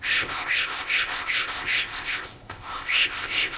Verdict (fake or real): fake